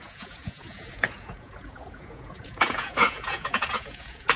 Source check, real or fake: fake